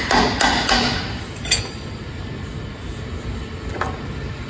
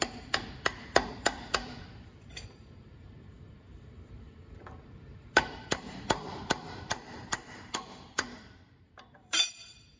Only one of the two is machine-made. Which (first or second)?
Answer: second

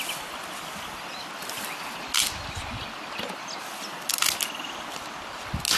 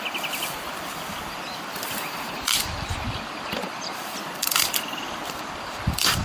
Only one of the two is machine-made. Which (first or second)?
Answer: second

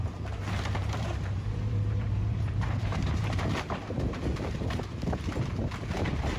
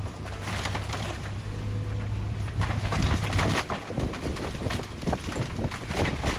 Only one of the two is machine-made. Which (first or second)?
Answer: first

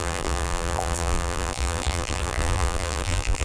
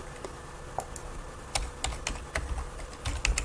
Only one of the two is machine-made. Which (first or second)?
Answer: first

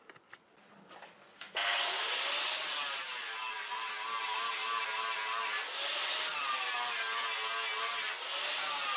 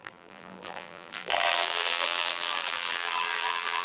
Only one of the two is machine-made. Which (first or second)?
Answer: second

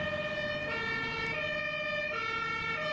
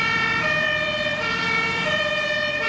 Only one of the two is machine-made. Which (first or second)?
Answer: second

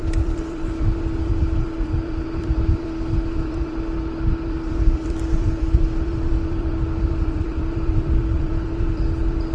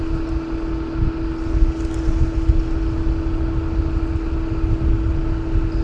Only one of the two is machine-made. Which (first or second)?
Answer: first